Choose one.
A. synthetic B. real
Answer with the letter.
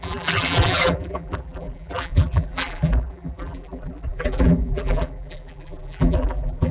A